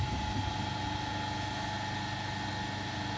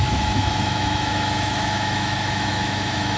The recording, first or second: first